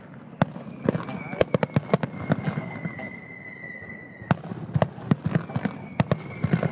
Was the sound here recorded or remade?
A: recorded